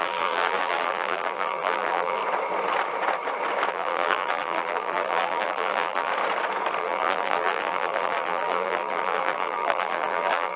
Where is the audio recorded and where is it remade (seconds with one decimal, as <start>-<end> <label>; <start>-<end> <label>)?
0.0-2.2 remade; 2.2-3.7 recorded; 3.7-6.1 remade; 6.1-6.8 recorded; 6.8-10.6 remade